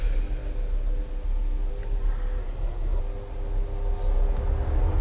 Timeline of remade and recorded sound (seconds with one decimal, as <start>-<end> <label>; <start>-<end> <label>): 0.0-2.4 recorded; 2.4-3.0 remade; 3.0-5.0 recorded